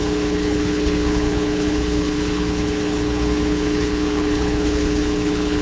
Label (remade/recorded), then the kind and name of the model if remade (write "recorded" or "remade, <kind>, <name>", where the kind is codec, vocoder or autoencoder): remade, codec, HILCodec